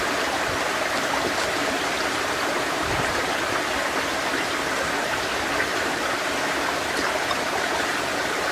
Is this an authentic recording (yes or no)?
yes